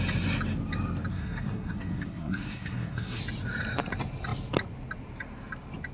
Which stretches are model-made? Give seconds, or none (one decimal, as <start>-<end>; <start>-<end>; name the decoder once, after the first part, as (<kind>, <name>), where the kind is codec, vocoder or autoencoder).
1.1-3.2 (codec, SNAC)